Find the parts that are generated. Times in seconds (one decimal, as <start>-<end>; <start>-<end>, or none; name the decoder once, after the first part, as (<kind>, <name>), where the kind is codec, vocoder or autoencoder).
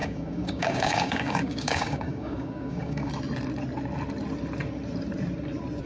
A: 0.0-3.1 (codec, DAC)